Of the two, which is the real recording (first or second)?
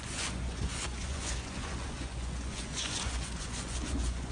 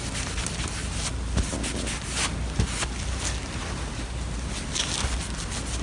second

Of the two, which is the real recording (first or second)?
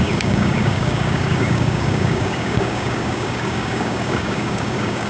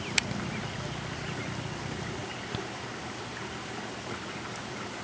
second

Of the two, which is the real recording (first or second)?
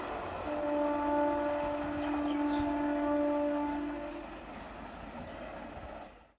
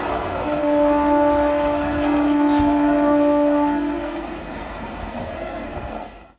first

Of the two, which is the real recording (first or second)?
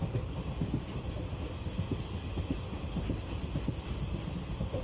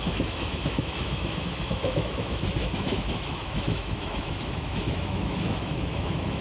first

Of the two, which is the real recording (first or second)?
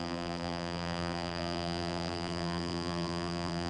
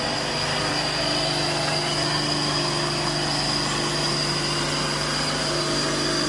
second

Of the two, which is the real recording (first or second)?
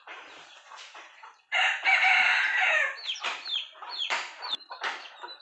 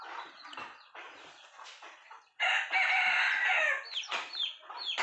second